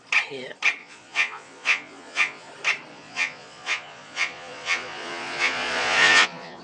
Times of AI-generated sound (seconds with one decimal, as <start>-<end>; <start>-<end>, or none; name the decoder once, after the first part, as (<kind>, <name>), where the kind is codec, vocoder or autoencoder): 0.8-2.5 (vocoder, Vocos); 2.9-6.6

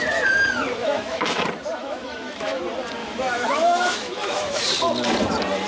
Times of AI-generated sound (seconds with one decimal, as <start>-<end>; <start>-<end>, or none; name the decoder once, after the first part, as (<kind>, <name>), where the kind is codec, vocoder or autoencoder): 0.8-1.4 (autoencoder, DAC-VAE); 1.8-2.6; 3.0-4.6

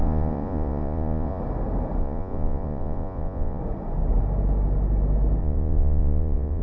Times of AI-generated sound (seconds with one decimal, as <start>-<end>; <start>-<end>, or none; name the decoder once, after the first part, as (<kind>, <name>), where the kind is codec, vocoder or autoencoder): 0.0-1.4 (vocoder, Vocos); 2.0-3.6; 5.4-6.6

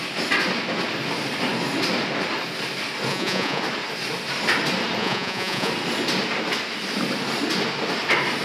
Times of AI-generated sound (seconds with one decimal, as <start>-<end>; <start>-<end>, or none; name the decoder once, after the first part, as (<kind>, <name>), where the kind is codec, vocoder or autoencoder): 3.1-3.6 (vocoder, Vocos); 5.0-5.7

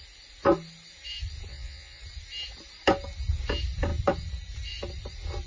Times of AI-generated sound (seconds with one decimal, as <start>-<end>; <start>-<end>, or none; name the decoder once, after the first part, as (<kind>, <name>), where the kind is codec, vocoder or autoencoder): 1.5-2.0 (vocoder, Vocos)

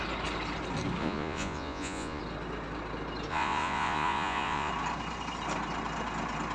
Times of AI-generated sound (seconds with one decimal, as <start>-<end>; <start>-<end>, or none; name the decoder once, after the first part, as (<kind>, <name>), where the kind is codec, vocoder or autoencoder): 1.0-2.2 (vocoder, Vocos); 3.3-4.7

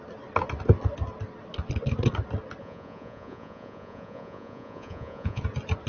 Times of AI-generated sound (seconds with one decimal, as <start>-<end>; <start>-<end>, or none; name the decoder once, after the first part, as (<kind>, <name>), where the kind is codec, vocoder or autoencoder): 2.6-5.4 (vocoder, Vocos)

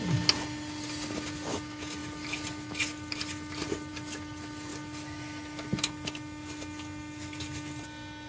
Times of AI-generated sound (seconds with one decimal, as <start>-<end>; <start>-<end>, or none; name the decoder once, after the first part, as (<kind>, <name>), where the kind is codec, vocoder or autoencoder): none